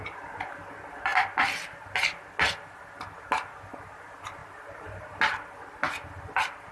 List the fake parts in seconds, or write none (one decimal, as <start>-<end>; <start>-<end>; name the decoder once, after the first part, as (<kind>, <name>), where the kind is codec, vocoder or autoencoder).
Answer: none